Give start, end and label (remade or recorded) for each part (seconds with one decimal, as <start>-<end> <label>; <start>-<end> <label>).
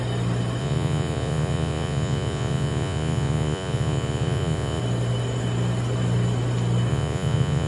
0.0-0.6 recorded; 0.6-4.8 remade; 4.8-6.9 recorded; 6.9-7.7 remade